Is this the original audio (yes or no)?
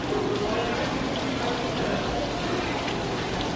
yes